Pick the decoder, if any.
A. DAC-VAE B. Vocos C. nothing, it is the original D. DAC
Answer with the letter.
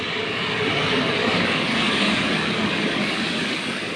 D